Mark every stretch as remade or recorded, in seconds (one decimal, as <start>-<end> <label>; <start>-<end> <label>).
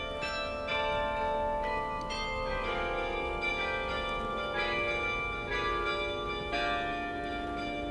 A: 0.0-7.9 recorded